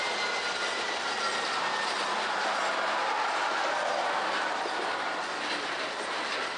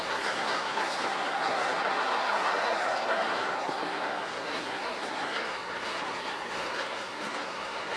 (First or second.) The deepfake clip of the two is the second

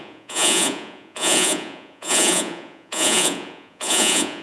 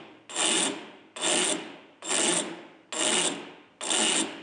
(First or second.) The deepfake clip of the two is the first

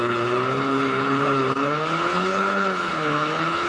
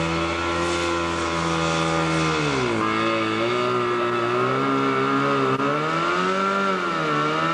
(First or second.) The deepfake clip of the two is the first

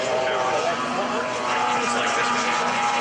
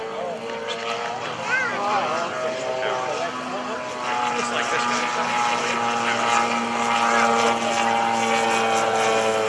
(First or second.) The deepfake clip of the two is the first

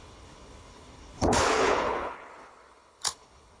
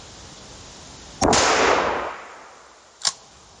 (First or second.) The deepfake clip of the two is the first